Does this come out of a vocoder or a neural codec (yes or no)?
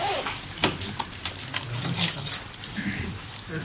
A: no